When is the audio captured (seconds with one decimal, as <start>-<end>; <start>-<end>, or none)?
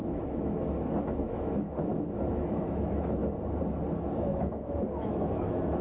3.2-4.1